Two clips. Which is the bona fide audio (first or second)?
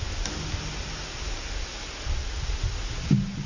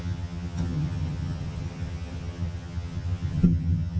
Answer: first